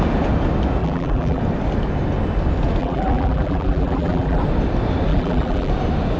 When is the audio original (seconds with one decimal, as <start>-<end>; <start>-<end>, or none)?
0.0-0.8; 1.4-2.8; 4.4-5.1; 5.7-6.2